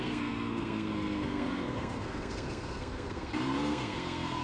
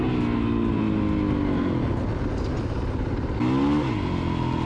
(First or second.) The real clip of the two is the second